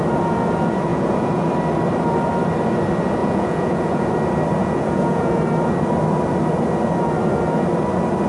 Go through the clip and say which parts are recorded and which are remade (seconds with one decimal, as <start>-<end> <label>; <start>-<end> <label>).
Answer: 0.0-0.9 recorded; 0.9-1.5 remade; 1.5-3.2 recorded; 3.2-4.1 remade; 4.1-4.6 recorded; 4.6-5.4 remade; 5.4-8.3 recorded